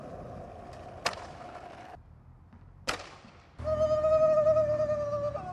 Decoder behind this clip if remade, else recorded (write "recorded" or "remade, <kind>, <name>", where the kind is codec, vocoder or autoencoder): recorded